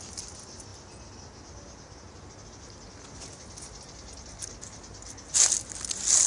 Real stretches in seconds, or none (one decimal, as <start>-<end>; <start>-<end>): 0.0-6.3

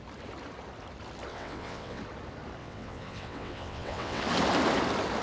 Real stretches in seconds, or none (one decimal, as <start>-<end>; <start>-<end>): 0.0-1.3; 2.0-2.6; 4.2-5.2

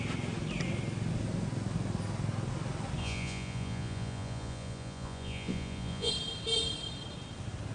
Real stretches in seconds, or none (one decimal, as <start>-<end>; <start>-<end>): 0.0-3.0; 6.1-7.7

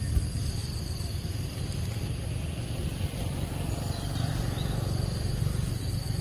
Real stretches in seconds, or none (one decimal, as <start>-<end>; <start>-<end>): 0.0-0.6; 4.3-6.2

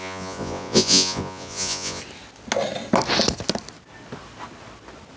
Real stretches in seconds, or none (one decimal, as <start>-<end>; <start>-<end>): 2.0-5.2

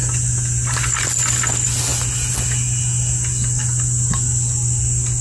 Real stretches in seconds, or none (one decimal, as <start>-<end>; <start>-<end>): 0.0-5.2

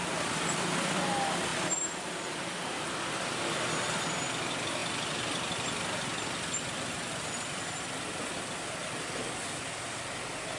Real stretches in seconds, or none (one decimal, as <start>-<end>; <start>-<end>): 1.0-4.8; 7.6-10.6

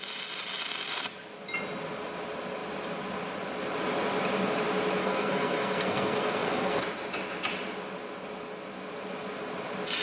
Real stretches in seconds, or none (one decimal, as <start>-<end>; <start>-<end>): 0.0-5.0; 6.8-10.0